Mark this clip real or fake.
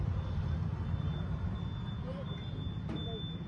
real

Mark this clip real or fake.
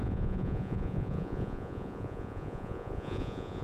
fake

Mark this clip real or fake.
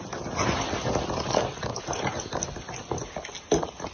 real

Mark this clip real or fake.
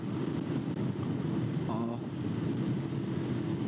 real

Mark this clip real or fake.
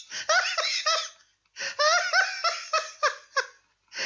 real